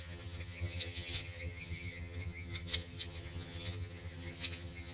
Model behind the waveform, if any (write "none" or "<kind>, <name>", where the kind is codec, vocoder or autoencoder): vocoder, HiFi-GAN